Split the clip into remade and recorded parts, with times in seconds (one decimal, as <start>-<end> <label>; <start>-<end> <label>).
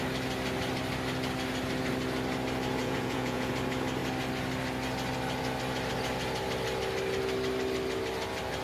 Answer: 0.0-2.8 recorded; 2.8-3.5 remade; 3.5-8.6 recorded